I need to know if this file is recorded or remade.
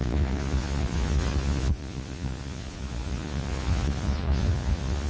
remade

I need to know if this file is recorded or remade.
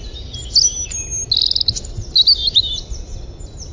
recorded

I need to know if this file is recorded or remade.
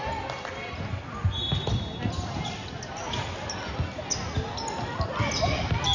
recorded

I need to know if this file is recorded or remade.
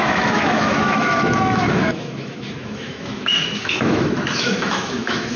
remade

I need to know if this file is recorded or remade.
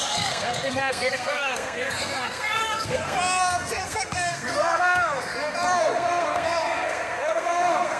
remade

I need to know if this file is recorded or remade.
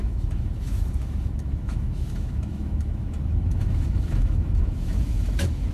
remade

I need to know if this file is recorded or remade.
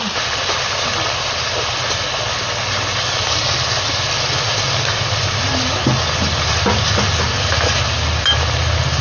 recorded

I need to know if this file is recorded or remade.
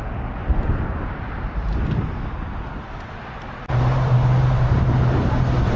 recorded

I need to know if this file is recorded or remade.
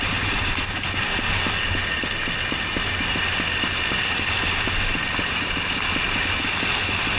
recorded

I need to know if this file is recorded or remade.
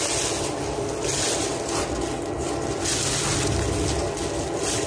recorded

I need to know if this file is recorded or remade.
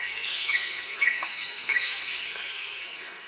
remade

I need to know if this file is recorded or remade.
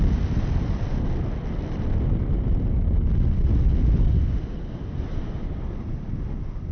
recorded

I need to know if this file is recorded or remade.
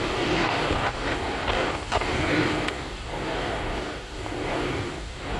remade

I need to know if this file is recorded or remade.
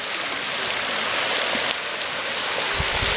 recorded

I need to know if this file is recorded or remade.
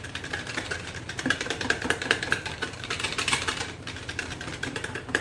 remade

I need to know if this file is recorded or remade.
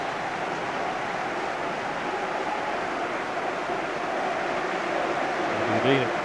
recorded